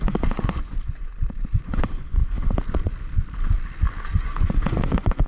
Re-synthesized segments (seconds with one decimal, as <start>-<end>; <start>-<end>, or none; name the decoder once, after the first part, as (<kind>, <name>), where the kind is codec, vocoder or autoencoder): 0.0-1.1 (vocoder, Vocos); 1.6-2.2; 4.2-5.3